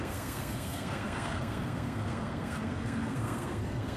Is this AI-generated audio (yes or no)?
yes